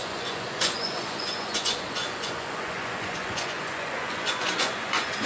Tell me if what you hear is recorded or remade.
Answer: remade